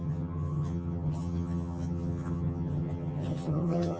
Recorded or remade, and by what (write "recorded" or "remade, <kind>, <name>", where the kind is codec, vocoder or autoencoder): remade, vocoder, HiFi-GAN